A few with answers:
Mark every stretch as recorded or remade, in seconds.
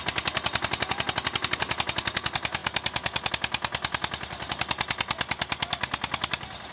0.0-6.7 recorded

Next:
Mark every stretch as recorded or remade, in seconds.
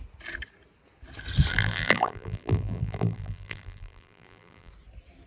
0.0-1.5 recorded; 1.5-4.7 remade; 4.7-5.3 recorded